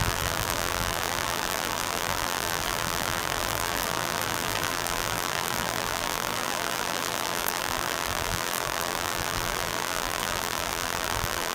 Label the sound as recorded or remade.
remade